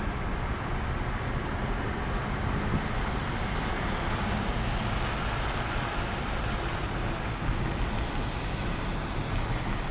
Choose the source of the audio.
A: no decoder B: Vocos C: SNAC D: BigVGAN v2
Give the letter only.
A